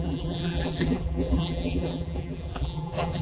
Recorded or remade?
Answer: remade